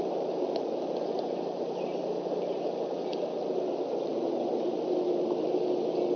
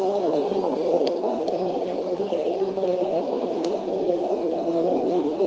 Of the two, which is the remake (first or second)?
second